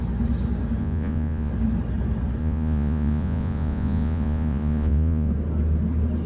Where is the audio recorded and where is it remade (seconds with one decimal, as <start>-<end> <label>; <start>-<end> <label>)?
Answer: 0.0-0.8 recorded; 0.8-1.5 remade; 1.5-2.4 recorded; 2.4-5.3 remade; 5.3-6.3 recorded